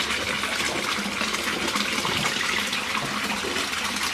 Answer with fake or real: real